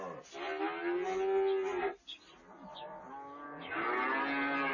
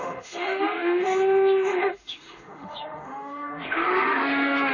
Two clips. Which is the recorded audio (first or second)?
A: first